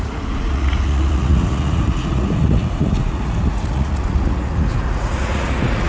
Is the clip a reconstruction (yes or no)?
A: yes